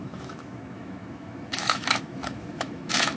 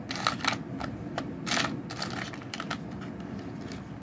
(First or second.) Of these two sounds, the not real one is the first